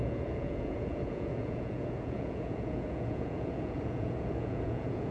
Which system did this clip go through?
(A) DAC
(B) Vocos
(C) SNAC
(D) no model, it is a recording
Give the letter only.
B